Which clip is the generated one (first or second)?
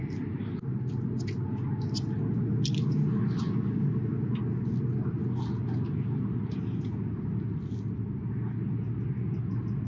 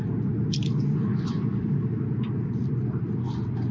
second